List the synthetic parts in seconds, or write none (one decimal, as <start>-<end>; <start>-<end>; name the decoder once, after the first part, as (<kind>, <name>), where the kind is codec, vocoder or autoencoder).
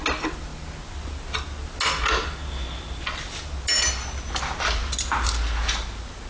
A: none